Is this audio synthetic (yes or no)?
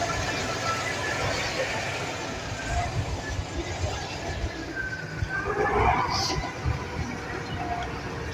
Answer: no